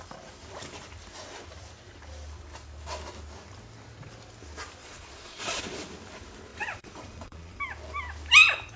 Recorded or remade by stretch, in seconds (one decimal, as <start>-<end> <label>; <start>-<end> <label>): 0.0-4.8 recorded; 4.8-5.6 remade; 5.6-6.5 recorded; 6.5-7.6 remade; 7.6-8.8 recorded